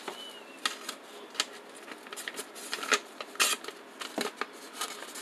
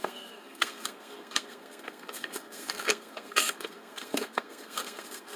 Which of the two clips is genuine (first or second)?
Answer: first